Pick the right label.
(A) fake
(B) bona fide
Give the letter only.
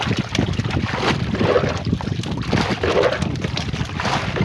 B